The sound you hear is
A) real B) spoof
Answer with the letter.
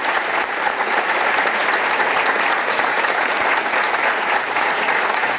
B